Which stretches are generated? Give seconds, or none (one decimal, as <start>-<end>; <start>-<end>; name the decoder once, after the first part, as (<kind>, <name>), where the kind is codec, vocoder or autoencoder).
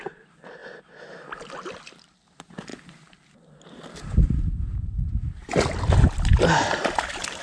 none